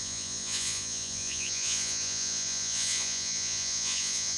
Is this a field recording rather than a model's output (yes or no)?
no